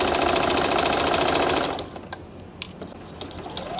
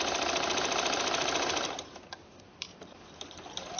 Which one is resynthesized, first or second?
second